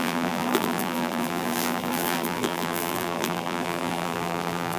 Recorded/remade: remade